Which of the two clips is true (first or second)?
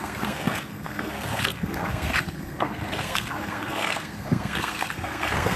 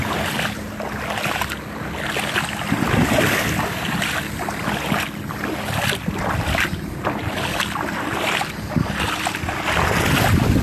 second